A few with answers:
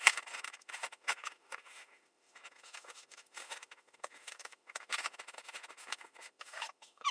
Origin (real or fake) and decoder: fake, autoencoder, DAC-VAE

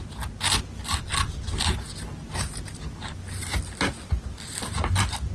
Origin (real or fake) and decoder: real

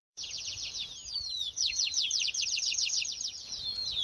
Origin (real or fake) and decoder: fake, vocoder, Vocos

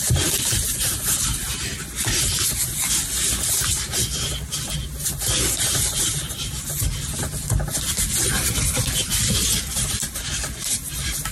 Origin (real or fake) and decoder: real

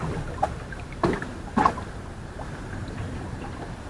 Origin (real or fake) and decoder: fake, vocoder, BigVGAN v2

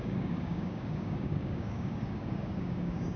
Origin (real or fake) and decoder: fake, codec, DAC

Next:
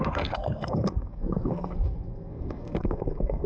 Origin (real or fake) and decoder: fake, codec, SNAC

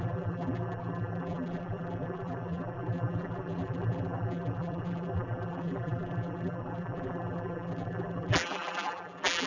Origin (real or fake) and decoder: fake, vocoder, BigVGAN v2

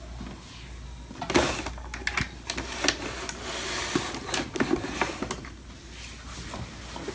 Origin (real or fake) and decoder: real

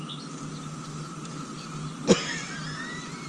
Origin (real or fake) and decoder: real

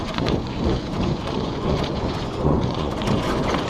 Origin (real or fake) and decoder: fake, vocoder, Vocos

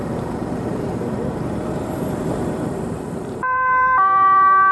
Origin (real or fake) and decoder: fake, vocoder, BigVGAN v2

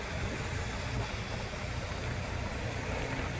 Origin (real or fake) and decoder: real